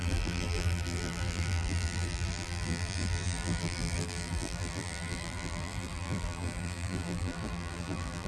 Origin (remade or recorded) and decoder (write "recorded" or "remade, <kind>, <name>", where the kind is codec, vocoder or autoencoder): remade, vocoder, BigVGAN v2